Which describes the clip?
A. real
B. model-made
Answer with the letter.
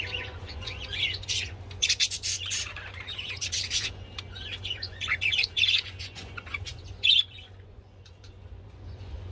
B